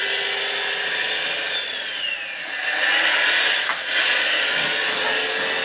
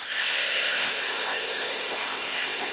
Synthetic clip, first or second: second